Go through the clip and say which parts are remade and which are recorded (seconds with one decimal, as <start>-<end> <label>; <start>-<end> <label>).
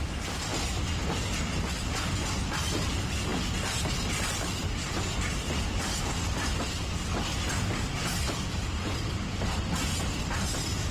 0.0-10.9 recorded